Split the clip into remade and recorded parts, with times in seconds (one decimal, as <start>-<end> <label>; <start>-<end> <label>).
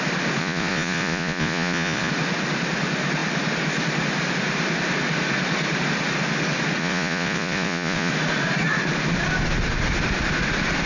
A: 0.0-0.4 recorded; 0.4-2.1 remade; 2.1-6.8 recorded; 6.8-8.1 remade; 8.1-10.9 recorded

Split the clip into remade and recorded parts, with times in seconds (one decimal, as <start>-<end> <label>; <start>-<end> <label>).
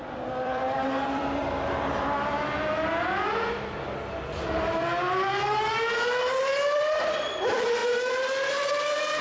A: 0.0-1.4 remade; 1.4-6.3 recorded; 6.3-9.2 remade